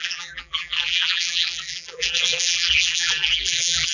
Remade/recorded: remade